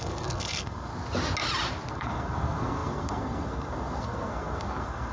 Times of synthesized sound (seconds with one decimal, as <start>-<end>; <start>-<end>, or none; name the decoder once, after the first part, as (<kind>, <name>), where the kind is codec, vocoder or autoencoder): 0.0-0.9 (codec, SNAC); 1.9-5.1